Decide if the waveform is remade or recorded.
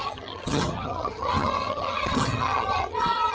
remade